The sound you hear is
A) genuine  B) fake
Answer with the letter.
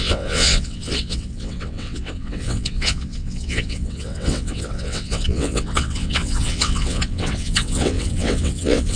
B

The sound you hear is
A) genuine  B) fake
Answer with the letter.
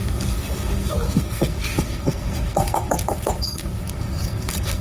B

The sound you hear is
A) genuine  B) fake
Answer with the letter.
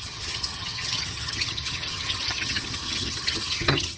B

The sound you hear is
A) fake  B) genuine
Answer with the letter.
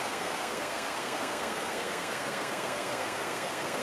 A